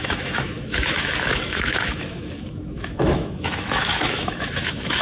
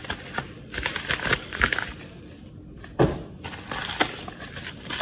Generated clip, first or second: first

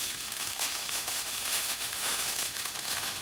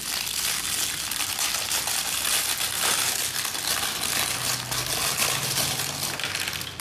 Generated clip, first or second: first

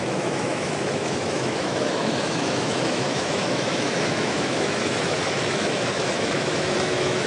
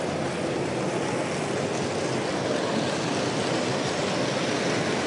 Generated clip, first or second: first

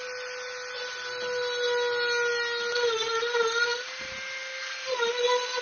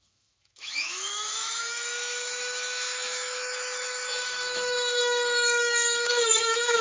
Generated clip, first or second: second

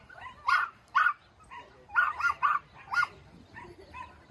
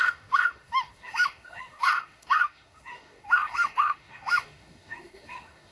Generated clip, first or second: second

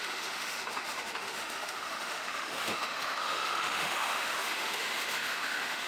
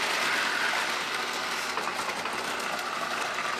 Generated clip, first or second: first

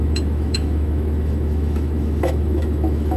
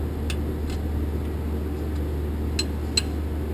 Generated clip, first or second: first